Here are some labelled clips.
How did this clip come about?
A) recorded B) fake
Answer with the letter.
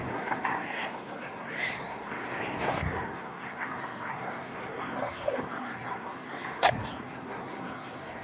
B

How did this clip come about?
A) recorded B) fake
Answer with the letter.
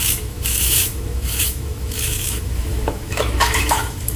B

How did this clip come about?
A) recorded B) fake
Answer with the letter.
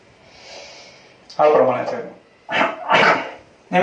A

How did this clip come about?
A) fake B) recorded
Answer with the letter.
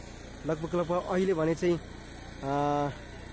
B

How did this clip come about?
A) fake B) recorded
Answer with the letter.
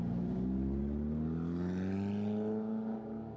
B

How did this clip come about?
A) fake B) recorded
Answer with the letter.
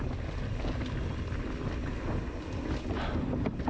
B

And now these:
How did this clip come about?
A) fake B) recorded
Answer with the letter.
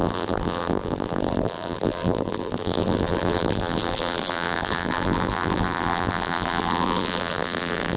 A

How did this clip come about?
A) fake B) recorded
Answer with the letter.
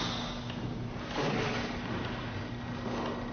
B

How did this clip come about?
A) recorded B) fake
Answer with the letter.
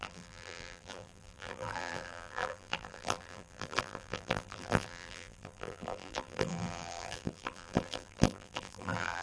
B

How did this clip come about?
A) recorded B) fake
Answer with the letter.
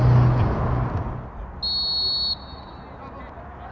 A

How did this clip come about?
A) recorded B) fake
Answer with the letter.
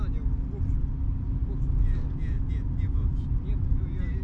A